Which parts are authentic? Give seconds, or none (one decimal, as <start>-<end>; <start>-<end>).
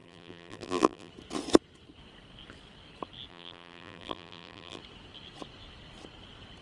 1.1-3.3; 4.8-6.6